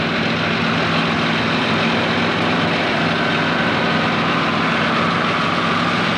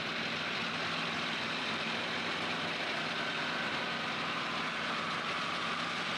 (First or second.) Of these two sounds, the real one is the first